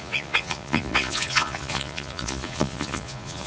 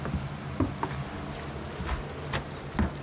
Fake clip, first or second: first